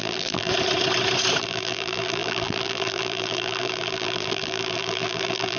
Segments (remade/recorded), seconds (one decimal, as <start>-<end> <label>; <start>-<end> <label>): 0.0-0.5 remade; 0.5-1.4 recorded; 1.4-5.6 remade